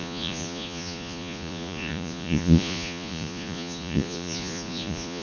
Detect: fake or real fake